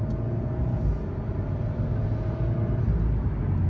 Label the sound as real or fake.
real